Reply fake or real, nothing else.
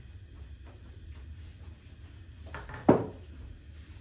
real